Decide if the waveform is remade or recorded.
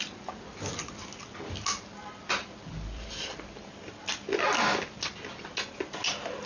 recorded